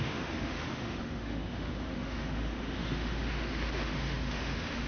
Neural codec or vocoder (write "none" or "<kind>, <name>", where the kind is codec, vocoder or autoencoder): autoencoder, DAC-VAE